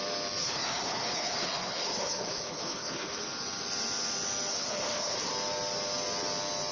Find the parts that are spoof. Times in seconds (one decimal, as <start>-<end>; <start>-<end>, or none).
0.4-3.2; 4.5-5.3